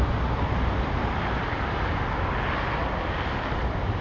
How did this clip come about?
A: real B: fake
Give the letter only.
A